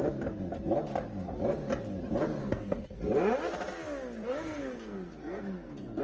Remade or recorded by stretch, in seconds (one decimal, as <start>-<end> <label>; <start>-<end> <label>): 0.0-2.4 recorded; 2.4-3.0 remade; 3.0-4.3 recorded; 4.3-6.0 remade